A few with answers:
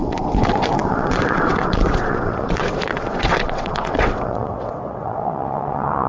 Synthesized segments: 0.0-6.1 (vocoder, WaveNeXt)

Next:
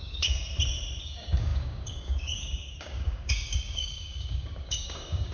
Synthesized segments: 0.0-0.5 (codec, DAC); 1.0-5.3